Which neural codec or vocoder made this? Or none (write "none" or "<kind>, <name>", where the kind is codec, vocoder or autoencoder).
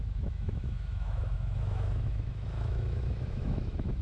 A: autoencoder, DAC-VAE